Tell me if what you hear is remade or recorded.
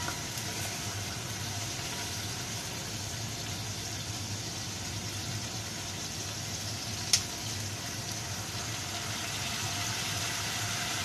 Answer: recorded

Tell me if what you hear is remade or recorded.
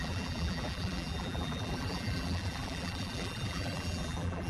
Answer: remade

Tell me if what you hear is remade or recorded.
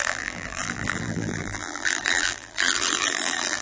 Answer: remade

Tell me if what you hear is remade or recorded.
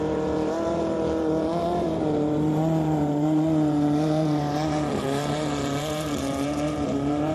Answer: remade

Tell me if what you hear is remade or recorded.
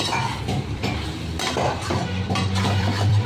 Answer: remade